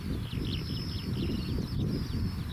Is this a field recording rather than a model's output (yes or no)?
yes